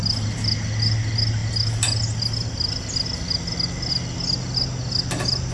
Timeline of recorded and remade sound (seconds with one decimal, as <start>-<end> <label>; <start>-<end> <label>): 0.0-5.5 recorded